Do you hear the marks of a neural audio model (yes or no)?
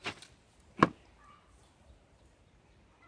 no